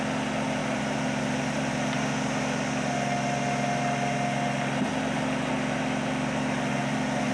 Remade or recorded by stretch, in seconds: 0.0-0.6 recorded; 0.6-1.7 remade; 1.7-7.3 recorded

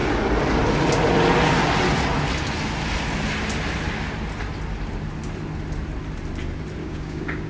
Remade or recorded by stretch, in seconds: 0.0-6.8 recorded; 6.8-7.5 remade

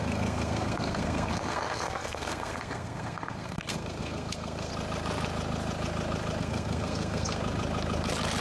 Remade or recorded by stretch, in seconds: 0.0-4.7 remade; 4.7-6.4 recorded; 6.4-7.4 remade; 7.4-8.4 recorded

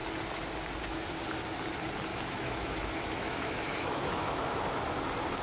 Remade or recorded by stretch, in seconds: 0.0-2.1 recorded; 2.1-4.8 remade; 4.8-5.4 recorded

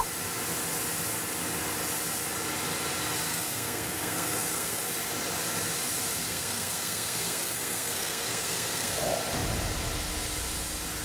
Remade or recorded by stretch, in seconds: 0.0-3.3 recorded; 3.3-4.8 remade; 4.8-6.3 recorded; 6.3-9.0 remade; 9.0-11.0 recorded